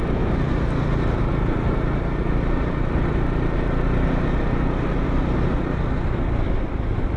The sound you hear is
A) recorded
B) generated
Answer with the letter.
A